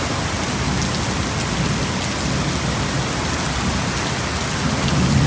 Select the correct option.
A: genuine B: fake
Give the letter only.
A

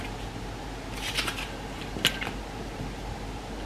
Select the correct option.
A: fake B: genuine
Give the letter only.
B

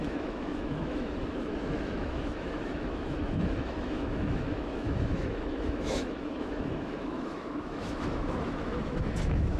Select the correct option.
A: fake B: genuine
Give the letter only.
A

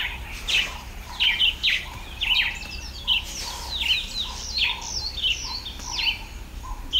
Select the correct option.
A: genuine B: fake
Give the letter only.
A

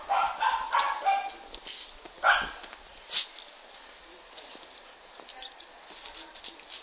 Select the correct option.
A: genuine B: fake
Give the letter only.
A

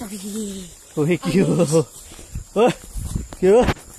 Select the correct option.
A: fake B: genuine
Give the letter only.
B